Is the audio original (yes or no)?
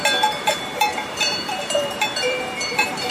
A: no